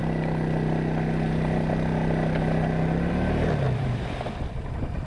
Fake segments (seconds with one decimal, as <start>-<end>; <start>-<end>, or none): none